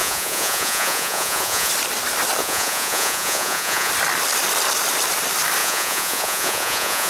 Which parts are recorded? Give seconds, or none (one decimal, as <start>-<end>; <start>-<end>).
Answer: 1.7-2.4; 3.9-5.6